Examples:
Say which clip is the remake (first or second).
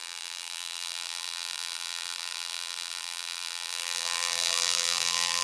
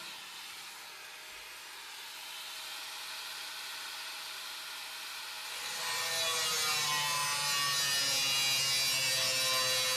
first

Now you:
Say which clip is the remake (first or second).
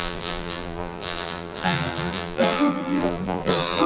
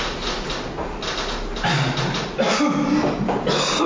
first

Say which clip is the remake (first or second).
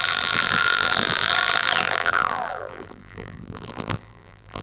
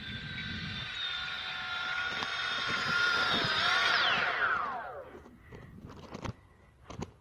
first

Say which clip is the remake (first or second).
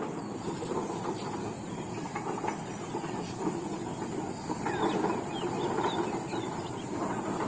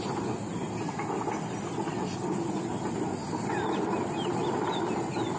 first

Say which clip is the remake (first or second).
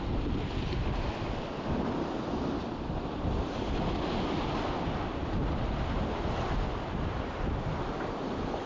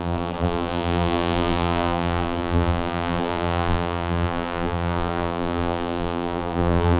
second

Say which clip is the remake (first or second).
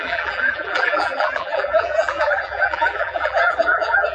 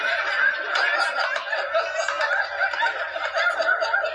first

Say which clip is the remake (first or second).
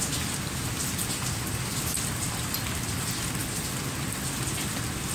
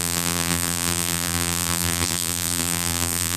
second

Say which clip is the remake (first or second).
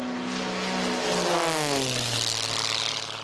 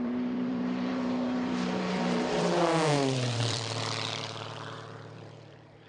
second